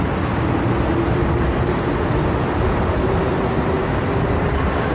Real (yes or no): yes